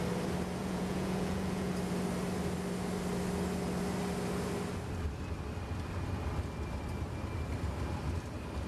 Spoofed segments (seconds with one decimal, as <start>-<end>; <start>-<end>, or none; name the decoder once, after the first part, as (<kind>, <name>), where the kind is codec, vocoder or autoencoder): 0.6-1.7 (vocoder, Vocos)